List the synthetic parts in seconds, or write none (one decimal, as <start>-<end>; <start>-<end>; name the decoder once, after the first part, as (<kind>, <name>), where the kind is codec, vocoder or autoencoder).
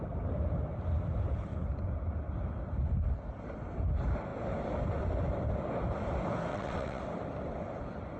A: 6.5-7.0 (vocoder, WaveNeXt)